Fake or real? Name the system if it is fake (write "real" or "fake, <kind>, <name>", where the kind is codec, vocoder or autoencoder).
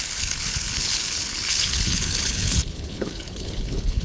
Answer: fake, codec, HILCodec